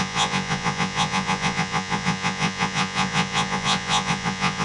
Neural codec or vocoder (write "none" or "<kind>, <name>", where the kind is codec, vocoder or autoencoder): vocoder, Vocos